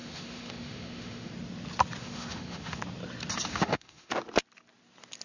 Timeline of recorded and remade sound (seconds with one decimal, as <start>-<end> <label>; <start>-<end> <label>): 0.0-1.3 remade; 1.3-2.0 recorded; 2.0-2.8 remade; 2.8-3.5 recorded; 3.5-4.1 remade; 4.1-5.2 recorded